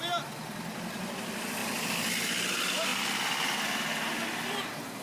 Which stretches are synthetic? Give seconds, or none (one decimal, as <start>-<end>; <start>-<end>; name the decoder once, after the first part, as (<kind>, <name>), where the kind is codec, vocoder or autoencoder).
1.6-2.1 (vocoder, BigVGAN v2)